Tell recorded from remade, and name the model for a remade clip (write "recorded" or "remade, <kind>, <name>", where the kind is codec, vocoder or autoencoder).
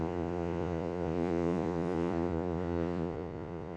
remade, vocoder, Vocos